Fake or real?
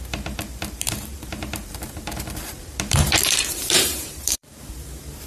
fake